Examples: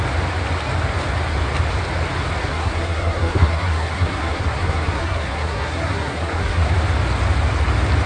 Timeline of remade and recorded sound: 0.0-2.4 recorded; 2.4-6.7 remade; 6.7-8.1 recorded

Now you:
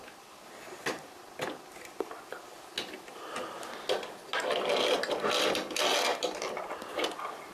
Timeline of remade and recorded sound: 0.0-7.5 recorded

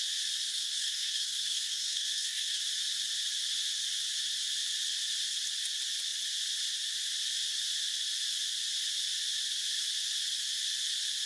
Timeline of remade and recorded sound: 0.0-0.5 recorded; 0.5-2.6 remade; 2.6-11.3 recorded

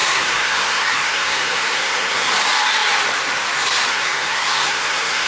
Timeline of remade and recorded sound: 0.0-2.3 remade; 2.3-3.9 recorded; 3.9-5.3 remade

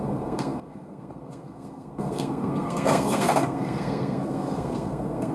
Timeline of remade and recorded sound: 0.0-5.3 remade

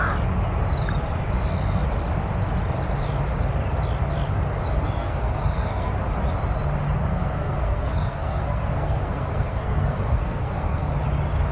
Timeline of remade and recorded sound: 0.0-5.0 recorded; 5.0-5.9 remade; 5.9-7.1 recorded; 7.1-10.9 remade; 10.9-11.5 recorded

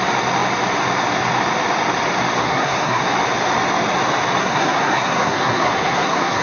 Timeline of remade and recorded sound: 0.0-2.4 recorded; 2.4-3.1 remade; 3.1-4.4 recorded; 4.4-6.4 remade

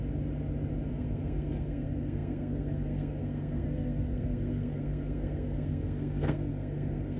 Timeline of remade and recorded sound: 0.0-0.9 recorded; 0.9-7.2 remade